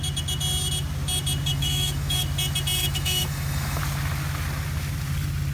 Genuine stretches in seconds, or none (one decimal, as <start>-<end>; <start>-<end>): 0.0-1.5; 2.2-2.8; 3.8-5.5